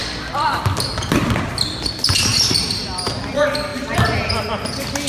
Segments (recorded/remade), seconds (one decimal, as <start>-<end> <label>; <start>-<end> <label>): 0.0-5.1 recorded